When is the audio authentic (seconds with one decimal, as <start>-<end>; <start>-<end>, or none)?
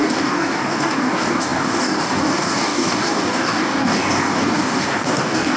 none